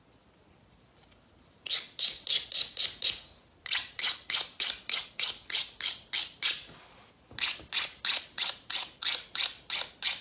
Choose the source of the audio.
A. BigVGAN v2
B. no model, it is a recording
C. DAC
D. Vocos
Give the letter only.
B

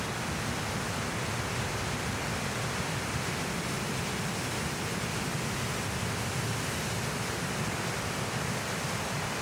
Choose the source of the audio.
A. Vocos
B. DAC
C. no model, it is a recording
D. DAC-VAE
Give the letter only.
C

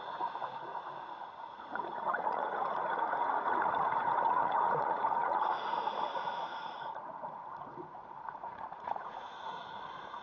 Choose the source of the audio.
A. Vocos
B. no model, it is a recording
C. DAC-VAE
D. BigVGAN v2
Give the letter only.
A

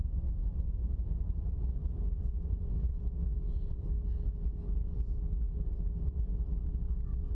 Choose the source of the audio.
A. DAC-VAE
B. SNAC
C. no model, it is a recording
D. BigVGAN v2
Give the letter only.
C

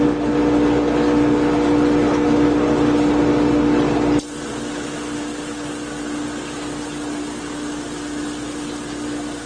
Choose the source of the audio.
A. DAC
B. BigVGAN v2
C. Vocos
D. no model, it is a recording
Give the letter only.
D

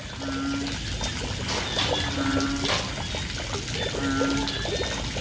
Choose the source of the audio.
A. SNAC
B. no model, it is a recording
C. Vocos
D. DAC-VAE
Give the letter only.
B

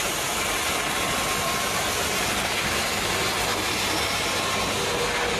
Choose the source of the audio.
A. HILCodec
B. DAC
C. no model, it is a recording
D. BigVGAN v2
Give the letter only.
C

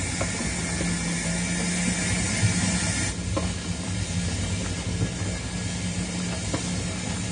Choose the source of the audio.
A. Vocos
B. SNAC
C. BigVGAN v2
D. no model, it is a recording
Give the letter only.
D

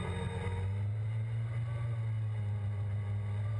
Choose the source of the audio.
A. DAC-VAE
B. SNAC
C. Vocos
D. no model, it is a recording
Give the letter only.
D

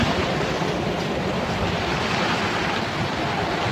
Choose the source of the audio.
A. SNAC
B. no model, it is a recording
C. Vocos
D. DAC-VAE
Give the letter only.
B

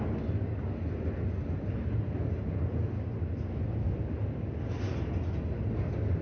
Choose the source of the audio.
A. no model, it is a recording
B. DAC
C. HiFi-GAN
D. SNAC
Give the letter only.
A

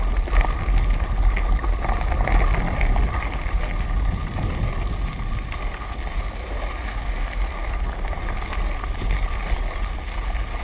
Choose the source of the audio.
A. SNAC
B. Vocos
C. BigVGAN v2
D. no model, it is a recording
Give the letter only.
D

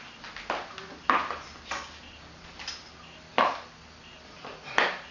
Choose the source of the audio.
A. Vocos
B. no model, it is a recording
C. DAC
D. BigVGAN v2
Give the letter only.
B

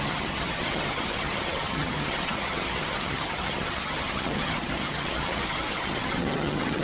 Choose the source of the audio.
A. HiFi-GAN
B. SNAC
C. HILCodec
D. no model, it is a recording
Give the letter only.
A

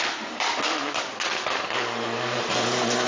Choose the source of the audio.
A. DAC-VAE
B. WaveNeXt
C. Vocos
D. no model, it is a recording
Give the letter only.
D